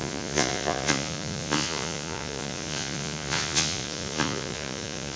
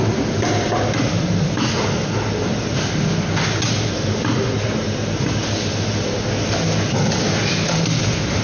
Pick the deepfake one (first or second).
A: first